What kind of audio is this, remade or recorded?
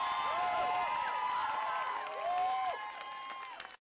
recorded